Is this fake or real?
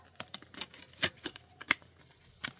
fake